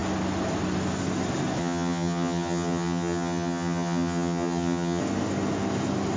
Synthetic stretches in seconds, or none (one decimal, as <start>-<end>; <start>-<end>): 1.6-5.0